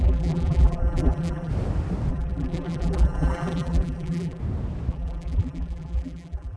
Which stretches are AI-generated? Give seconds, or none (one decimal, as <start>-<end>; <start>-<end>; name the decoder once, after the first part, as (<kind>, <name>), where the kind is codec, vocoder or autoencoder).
0.0-1.5 (vocoder, BigVGAN v2); 2.1-4.4; 4.9-6.6